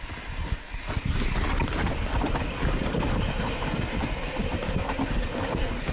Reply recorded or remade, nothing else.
recorded